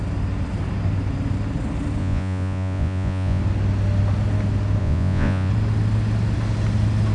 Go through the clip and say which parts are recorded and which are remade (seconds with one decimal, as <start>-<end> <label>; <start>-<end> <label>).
0.0-2.0 recorded; 2.0-3.4 remade; 3.4-4.8 recorded; 4.8-5.5 remade; 5.5-7.1 recorded